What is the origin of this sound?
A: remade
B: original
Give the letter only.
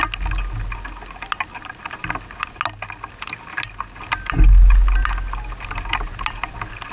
B